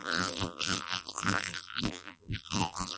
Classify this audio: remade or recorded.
remade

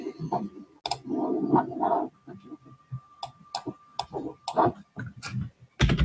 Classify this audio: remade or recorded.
recorded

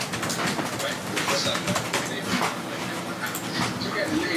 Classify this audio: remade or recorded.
recorded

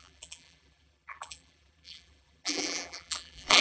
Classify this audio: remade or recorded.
remade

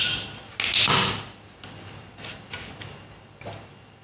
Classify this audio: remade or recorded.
recorded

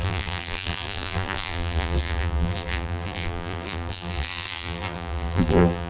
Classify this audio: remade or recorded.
remade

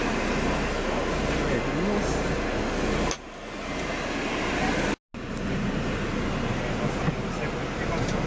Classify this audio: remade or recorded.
recorded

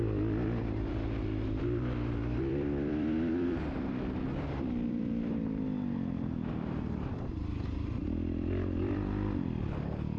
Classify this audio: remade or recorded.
remade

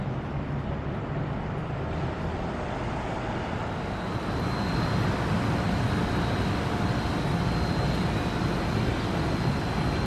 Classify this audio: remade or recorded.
recorded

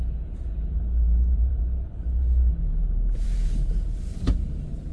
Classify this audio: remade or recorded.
remade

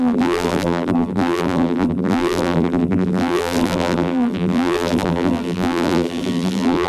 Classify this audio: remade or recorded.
remade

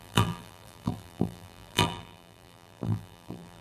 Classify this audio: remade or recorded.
remade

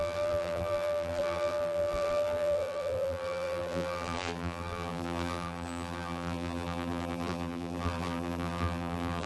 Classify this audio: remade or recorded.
remade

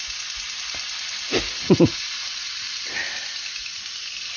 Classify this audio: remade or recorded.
recorded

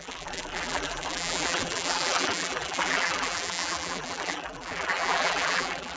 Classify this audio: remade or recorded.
remade